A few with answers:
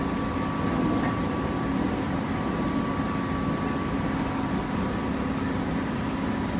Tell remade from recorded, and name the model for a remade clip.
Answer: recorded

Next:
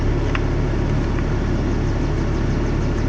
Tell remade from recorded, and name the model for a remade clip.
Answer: recorded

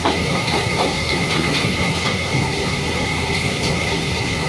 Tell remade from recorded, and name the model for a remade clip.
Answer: remade, codec, SNAC